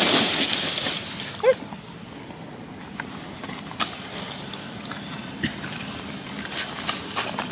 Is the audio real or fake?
real